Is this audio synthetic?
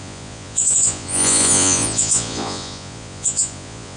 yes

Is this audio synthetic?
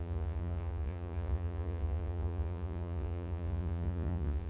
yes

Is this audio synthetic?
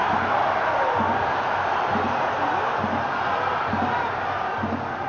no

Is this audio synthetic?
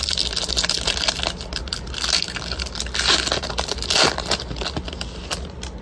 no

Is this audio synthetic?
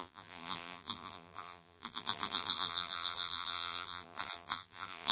yes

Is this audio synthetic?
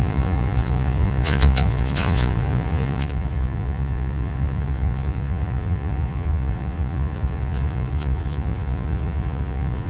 yes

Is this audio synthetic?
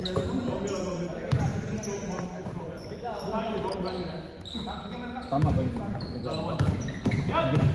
no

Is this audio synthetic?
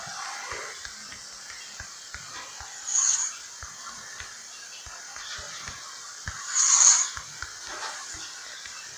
no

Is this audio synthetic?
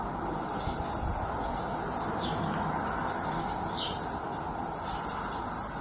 no